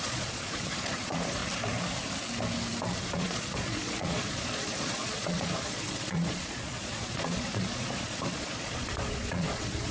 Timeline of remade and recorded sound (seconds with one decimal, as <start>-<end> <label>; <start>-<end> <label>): 0.0-1.4 remade; 1.4-3.0 recorded; 3.0-9.9 remade